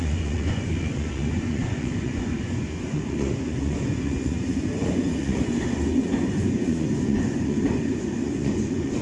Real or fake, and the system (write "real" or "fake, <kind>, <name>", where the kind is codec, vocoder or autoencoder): fake, vocoder, Vocos